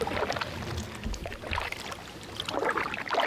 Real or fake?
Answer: real